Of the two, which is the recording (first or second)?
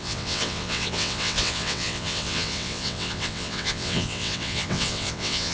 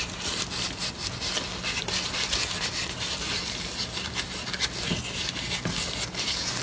second